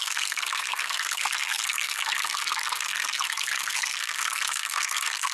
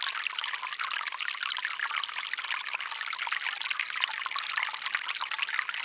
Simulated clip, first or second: first